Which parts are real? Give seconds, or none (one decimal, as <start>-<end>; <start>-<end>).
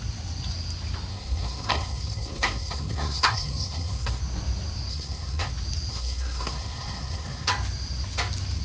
0.0-1.1; 4.2-4.9; 5.5-5.9; 7.5-8.6